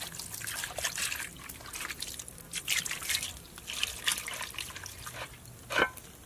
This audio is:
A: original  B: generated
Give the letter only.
A